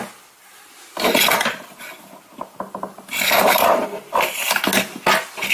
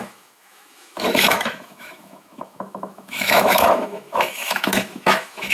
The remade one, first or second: second